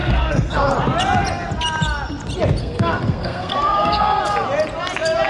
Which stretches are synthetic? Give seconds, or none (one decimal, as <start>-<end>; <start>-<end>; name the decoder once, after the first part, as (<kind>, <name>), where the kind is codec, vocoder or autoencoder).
0.0-0.7 (codec, SNAC); 2.6-4.2